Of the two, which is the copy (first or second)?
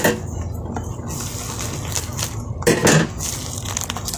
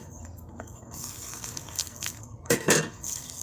second